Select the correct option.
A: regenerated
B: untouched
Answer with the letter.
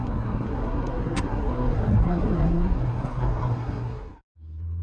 A